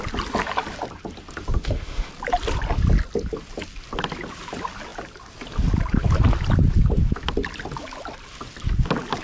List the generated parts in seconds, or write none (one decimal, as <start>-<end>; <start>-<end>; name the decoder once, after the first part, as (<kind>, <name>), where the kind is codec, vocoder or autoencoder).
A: 1.6-2.1 (autoencoder, DAC-VAE)